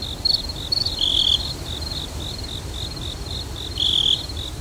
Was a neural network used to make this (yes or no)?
yes